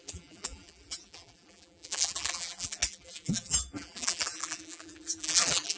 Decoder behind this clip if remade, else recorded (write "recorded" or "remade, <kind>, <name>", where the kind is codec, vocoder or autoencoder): remade, vocoder, BigVGAN v2